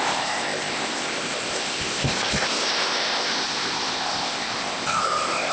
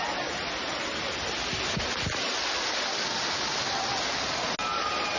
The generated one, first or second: first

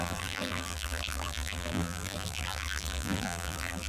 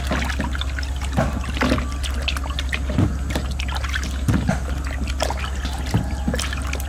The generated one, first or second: first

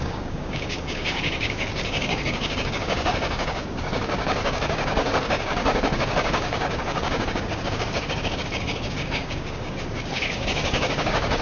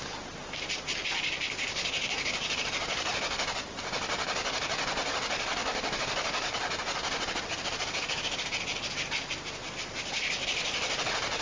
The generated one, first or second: first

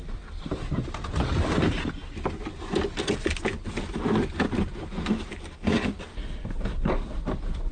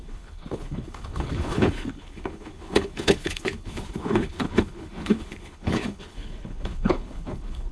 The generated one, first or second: second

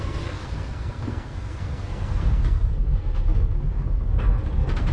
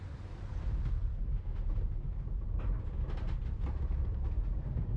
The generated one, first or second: first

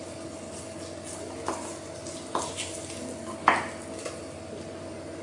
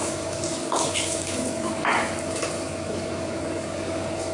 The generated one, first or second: second